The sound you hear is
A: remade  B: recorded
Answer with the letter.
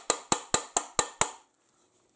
B